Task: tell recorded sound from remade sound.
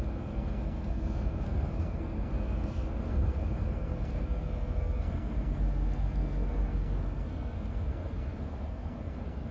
remade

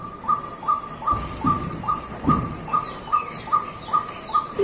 recorded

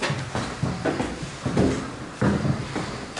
recorded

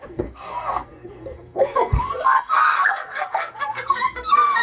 remade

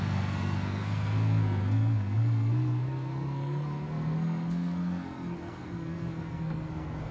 remade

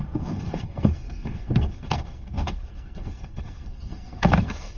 remade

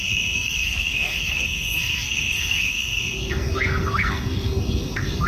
remade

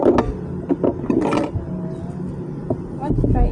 recorded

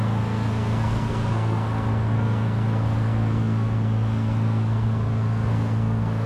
remade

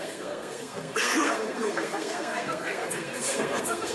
remade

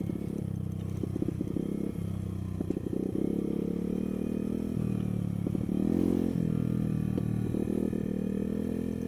recorded